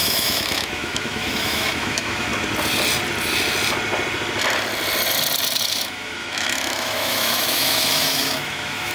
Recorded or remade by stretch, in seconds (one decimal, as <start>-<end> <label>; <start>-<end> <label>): 0.0-2.3 remade; 2.3-5.7 recorded; 5.7-8.9 remade